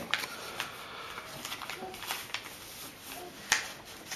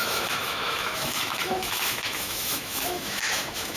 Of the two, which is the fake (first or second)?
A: second